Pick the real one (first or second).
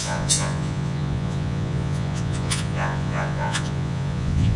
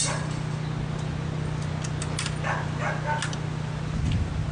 second